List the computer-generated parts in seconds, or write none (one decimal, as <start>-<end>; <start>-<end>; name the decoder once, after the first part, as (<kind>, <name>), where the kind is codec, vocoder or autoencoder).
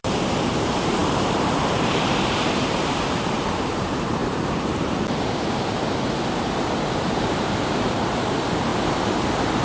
0.0-8.7 (vocoder, BigVGAN v2)